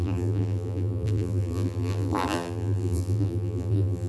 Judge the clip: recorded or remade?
remade